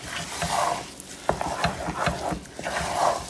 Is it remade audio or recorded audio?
recorded